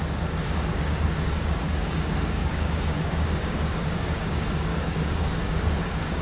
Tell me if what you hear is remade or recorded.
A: remade